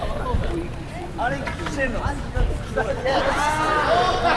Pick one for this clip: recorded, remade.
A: recorded